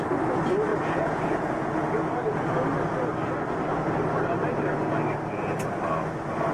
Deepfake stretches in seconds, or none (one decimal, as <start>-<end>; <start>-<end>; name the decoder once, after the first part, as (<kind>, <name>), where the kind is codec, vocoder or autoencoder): 0.7-2.5 (vocoder, Vocos)